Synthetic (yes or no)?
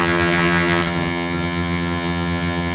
yes